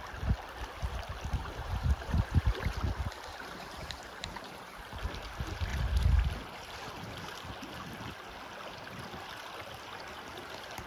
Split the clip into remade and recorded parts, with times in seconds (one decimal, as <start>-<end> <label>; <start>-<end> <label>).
0.0-1.4 recorded; 1.4-2.6 remade; 2.6-3.3 recorded; 3.3-4.8 remade; 4.8-10.9 recorded